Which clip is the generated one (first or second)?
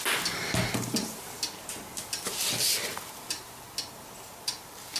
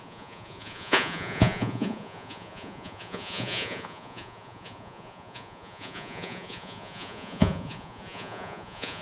second